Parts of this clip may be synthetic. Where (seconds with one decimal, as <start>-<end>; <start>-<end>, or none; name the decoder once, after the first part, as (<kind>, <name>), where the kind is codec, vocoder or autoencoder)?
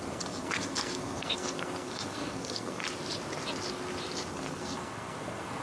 0.0-2.8 (codec, SNAC); 4.3-5.6